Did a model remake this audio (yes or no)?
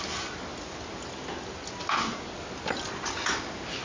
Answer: no